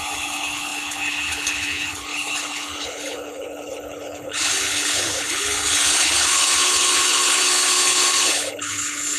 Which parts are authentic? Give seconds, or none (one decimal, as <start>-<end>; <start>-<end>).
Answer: none